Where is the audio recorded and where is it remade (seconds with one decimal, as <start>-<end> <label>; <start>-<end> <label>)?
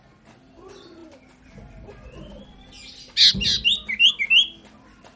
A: 0.0-5.2 recorded